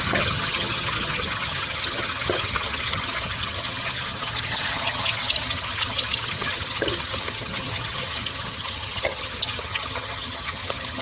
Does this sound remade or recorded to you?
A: remade